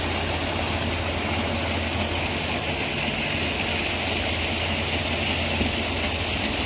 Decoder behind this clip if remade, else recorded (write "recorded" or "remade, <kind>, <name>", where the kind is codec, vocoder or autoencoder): recorded